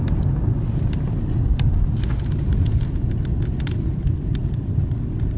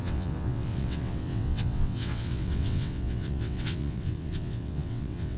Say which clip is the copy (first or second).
second